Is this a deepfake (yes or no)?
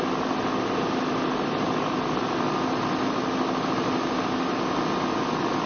no